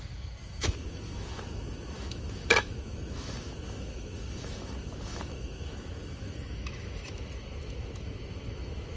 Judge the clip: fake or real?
fake